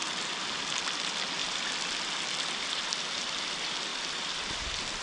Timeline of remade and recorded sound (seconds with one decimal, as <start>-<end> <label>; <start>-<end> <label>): 0.0-1.4 recorded; 1.4-2.9 remade; 2.9-3.9 recorded; 3.9-5.0 remade